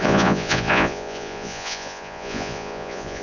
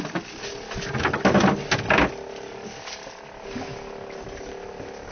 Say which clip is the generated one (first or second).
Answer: first